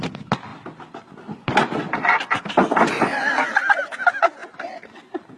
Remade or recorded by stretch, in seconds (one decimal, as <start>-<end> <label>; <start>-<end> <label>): 0.0-5.4 recorded